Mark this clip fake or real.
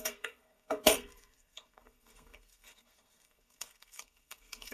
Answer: fake